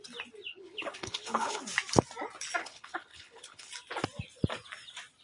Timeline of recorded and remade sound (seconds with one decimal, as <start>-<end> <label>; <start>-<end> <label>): 0.0-0.5 recorded; 0.5-1.6 remade; 1.6-2.6 recorded; 2.6-3.7 remade; 3.7-5.2 recorded